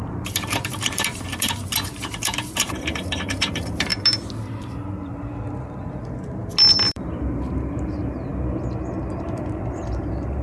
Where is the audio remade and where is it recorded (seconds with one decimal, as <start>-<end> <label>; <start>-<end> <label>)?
0.0-3.9 remade; 3.9-6.9 recorded; 6.9-8.3 remade; 8.3-9.1 recorded; 9.1-10.4 remade